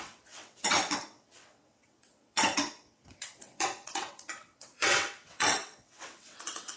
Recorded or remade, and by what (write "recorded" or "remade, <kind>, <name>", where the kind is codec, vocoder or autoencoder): remade, vocoder, WaveNeXt